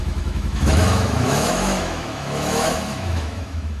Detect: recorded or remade remade